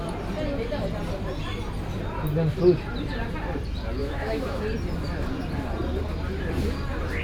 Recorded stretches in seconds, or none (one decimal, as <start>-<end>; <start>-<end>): 0.0-4.0; 4.6-7.2